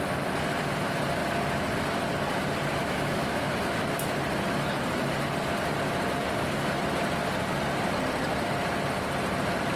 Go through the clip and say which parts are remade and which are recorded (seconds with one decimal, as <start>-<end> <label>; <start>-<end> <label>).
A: 0.0-2.8 recorded; 2.8-3.5 remade; 3.5-9.8 recorded